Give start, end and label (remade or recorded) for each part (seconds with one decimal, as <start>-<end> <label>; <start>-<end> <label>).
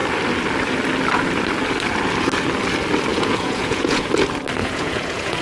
0.0-3.1 recorded; 3.1-4.1 remade; 4.1-4.6 recorded; 4.6-5.4 remade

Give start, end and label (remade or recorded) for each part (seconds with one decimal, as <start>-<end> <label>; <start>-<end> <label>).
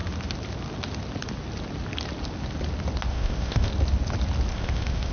0.0-3.1 recorded; 3.1-3.7 remade; 3.7-4.5 recorded; 4.5-5.1 remade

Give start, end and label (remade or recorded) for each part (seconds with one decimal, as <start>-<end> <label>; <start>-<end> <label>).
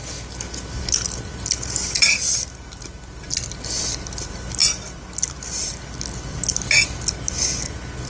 0.0-8.1 recorded